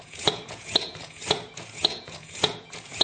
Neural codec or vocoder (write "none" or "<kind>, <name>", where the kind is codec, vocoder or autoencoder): vocoder, Vocos